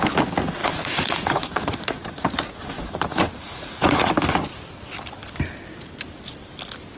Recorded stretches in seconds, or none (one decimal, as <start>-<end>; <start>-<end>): 0.0-0.6; 4.1-7.0